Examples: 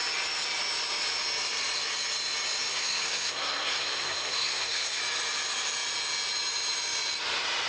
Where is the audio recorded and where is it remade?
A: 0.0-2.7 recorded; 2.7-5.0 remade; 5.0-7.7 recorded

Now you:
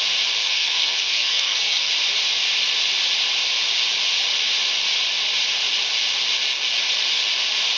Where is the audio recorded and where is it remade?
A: 0.0-0.4 recorded; 0.4-1.9 remade; 1.9-7.8 recorded

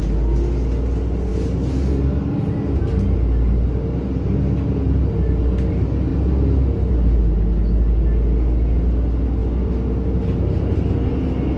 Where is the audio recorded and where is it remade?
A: 0.0-11.6 recorded

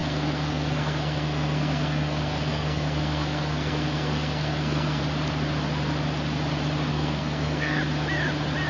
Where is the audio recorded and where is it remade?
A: 0.0-5.0 remade; 5.0-6.9 recorded; 6.9-7.8 remade; 7.8-8.7 recorded

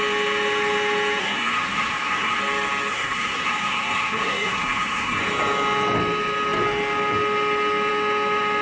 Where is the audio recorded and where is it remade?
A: 0.0-1.2 recorded; 1.2-2.4 remade; 2.4-2.9 recorded; 2.9-5.2 remade; 5.2-8.6 recorded